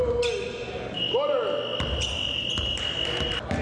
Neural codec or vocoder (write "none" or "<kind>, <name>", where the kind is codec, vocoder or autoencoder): none